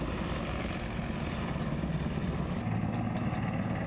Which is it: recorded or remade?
recorded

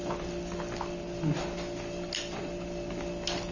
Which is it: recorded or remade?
recorded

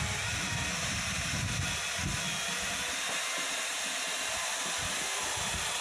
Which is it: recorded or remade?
recorded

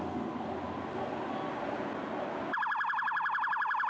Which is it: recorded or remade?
recorded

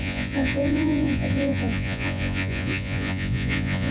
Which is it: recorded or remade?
remade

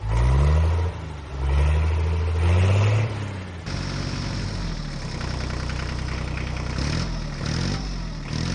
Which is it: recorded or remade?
recorded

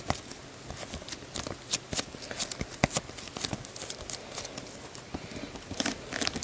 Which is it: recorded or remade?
recorded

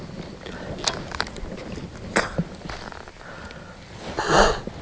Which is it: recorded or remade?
recorded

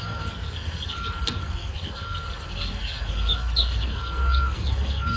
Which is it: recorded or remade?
remade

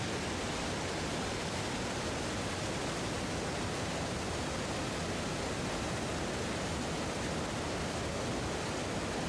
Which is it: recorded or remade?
recorded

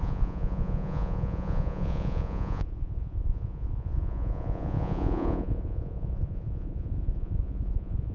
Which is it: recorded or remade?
remade